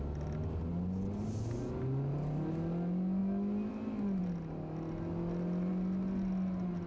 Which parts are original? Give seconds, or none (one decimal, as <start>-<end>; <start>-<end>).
0.0-6.9

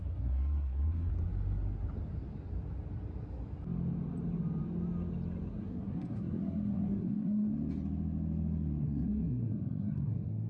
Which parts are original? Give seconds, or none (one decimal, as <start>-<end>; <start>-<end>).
1.1-5.5; 7.5-8.8

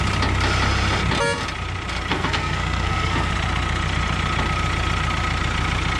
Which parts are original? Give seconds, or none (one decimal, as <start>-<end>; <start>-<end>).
0.0-2.1; 3.3-6.0

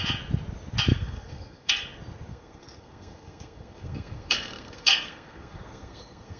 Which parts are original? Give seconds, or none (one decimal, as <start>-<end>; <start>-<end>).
0.0-0.9; 1.7-2.3

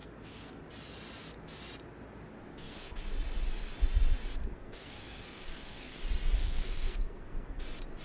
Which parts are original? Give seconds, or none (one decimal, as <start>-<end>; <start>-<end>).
0.6-2.5; 3.1-4.4; 6.0-6.4; 7.6-8.0